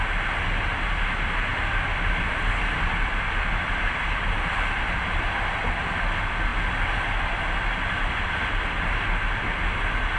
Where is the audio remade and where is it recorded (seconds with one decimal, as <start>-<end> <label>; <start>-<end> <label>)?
0.0-1.5 recorded; 1.5-5.4 remade; 5.4-10.2 recorded